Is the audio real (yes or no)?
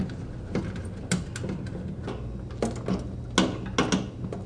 yes